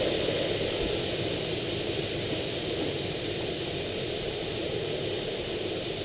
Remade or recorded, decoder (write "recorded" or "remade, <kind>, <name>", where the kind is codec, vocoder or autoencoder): recorded